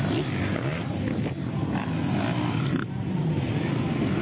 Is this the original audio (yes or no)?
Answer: yes